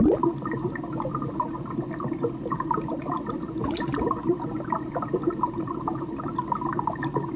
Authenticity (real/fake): real